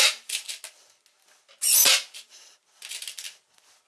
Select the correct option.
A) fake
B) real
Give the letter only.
B